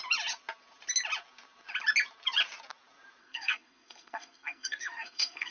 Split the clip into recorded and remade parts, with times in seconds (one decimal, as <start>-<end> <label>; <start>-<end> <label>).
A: 0.0-3.2 recorded; 3.2-5.5 remade